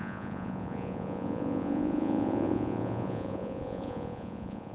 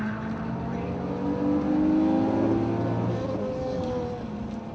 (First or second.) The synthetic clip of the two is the first